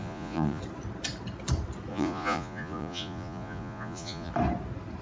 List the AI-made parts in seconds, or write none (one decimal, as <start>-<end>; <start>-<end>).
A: 0.0-0.6; 1.9-4.3

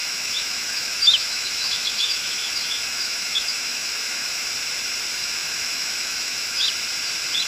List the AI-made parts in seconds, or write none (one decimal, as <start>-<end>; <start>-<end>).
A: 0.0-4.5; 5.2-6.7

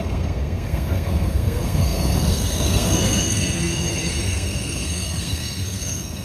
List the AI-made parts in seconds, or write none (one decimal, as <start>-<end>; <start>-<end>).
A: 0.0-6.2

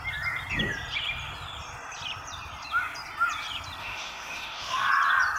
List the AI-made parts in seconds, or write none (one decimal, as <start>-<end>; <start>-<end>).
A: 3.8-4.9

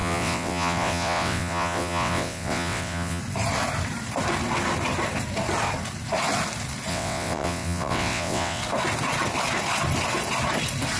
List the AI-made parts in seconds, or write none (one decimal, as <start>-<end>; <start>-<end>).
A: 0.0-3.2; 6.9-8.6

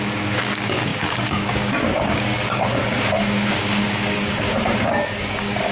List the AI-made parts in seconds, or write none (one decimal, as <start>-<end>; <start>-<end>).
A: 0.0-5.7